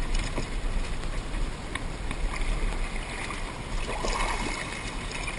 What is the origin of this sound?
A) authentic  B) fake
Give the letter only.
A